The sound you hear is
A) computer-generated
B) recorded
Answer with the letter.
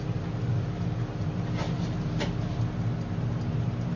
B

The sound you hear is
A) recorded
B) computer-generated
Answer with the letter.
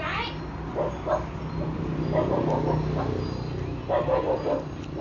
A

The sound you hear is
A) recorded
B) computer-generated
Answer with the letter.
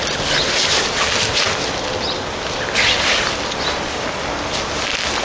A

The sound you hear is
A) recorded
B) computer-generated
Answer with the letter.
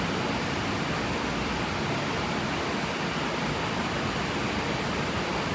A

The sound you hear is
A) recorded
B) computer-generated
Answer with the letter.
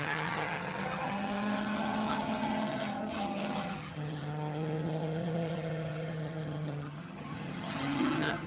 B